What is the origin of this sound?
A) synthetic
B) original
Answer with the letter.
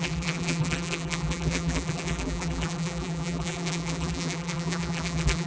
A